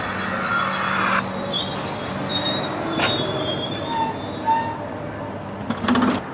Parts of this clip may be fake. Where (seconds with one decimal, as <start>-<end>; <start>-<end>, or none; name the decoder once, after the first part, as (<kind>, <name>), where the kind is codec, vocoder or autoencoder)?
2.3-3.8 (vocoder, BigVGAN v2)